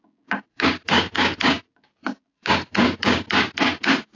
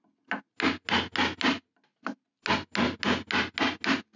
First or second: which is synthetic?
first